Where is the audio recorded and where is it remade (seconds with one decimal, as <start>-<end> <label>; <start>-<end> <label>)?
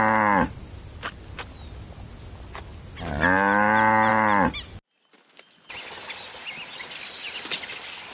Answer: 0.0-8.1 recorded